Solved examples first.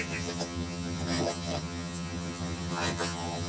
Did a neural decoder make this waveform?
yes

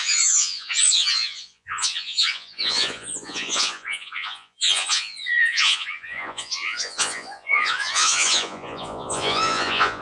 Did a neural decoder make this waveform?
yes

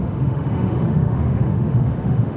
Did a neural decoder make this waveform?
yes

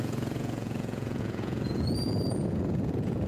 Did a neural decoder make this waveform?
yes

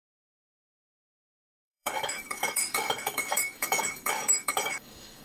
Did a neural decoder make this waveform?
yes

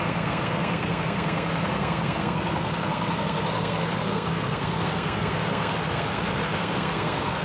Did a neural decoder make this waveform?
yes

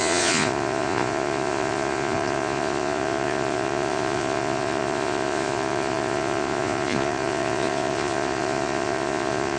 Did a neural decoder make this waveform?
yes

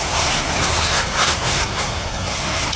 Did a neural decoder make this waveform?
yes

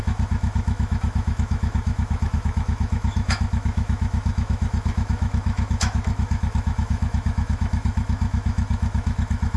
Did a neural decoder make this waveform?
yes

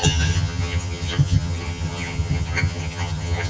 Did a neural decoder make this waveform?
yes